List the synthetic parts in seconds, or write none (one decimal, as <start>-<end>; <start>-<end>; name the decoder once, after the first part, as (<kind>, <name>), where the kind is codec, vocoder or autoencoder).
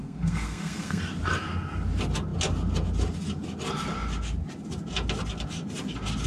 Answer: 0.0-1.0 (codec, SNAC)